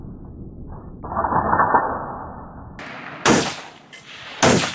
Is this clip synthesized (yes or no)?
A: no